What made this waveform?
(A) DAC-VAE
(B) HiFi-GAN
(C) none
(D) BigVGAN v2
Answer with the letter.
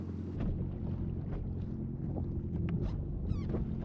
C